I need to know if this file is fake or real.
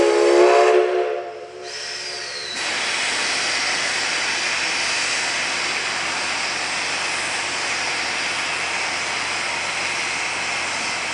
real